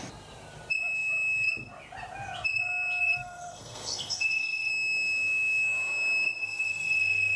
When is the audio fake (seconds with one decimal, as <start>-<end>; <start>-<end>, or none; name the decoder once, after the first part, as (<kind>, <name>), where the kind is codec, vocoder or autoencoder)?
3.0-4.7 (codec, SNAC); 6.4-7.4